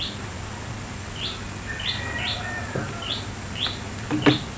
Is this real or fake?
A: real